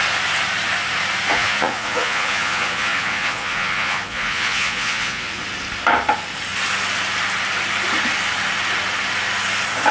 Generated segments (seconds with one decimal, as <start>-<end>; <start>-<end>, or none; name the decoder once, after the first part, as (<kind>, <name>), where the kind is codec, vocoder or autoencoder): 1.3-5.4 (vocoder, Vocos)